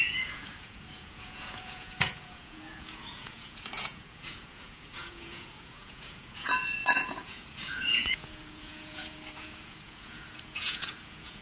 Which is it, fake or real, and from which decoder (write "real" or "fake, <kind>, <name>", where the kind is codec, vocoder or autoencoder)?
fake, vocoder, Vocos